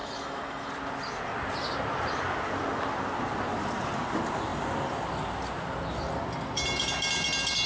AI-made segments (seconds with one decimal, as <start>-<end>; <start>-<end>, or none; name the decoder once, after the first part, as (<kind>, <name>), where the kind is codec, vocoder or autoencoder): 0.0-0.7 (autoencoder, DAC-VAE)